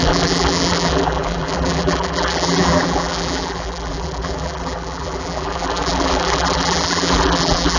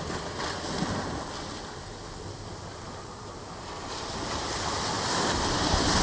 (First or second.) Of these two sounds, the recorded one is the second